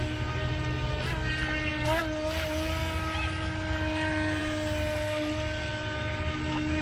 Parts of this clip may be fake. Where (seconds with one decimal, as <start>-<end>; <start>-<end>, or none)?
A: none